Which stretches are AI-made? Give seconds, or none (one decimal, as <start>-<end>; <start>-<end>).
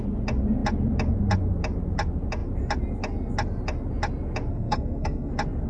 4.5-5.3